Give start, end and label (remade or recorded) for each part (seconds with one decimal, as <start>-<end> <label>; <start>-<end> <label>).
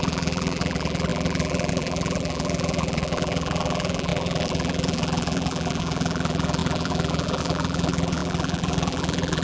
0.0-9.4 remade